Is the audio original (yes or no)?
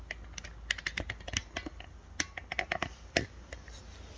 yes